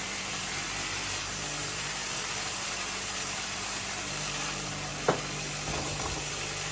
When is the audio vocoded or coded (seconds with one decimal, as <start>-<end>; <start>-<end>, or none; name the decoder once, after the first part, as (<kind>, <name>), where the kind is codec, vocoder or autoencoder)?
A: 0.0-4.9 (vocoder, BigVGAN v2); 6.3-6.7